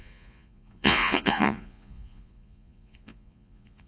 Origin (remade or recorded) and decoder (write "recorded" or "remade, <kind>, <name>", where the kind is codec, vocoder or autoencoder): remade, vocoder, Vocos